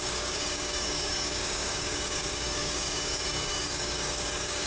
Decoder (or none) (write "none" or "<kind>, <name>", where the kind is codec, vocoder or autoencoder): codec, DAC